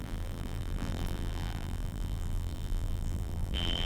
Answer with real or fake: fake